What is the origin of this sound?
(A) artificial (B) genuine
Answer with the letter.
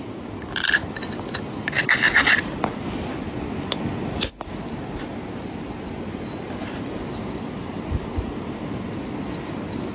B